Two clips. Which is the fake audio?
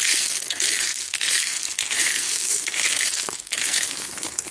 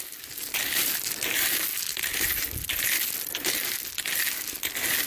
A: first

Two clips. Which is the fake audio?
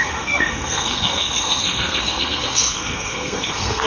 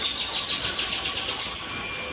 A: first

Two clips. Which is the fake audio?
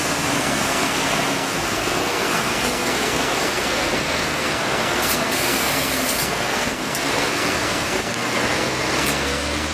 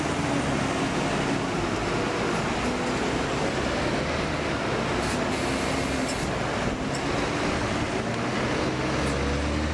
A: first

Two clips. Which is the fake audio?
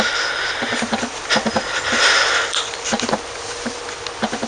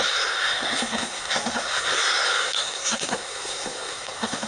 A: second